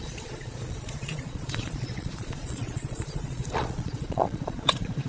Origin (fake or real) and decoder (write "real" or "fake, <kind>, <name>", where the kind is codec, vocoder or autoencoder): fake, vocoder, Vocos